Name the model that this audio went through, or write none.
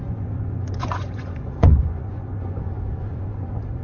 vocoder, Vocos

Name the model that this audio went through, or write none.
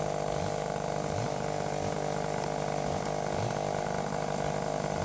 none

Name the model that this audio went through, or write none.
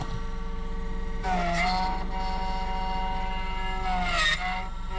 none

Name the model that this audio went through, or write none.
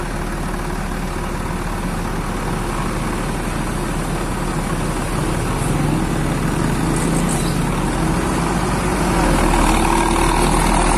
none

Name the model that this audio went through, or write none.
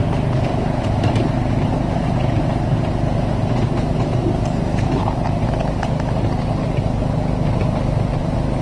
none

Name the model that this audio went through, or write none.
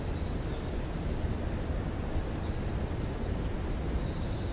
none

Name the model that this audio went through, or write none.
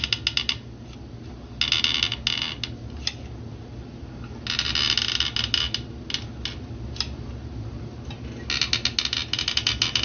none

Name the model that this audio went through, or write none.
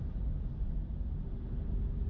none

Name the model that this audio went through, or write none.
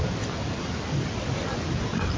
none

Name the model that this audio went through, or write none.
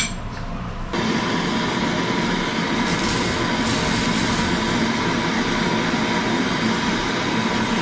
none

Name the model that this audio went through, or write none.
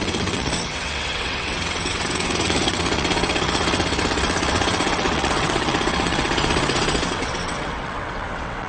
vocoder, WaveNeXt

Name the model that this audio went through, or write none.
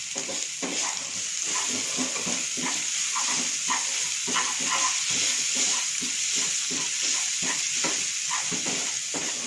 none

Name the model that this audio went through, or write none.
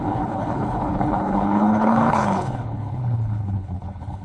codec, HILCodec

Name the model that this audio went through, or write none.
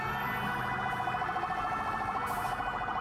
none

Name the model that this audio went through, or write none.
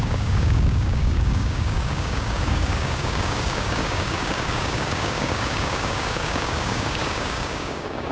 codec, DAC